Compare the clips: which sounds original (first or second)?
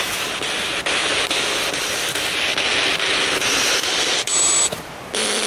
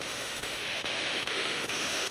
first